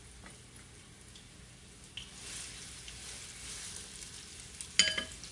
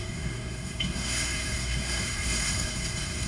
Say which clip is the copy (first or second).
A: second